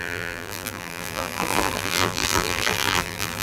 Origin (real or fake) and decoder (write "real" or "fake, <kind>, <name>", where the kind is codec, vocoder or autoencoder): fake, vocoder, BigVGAN v2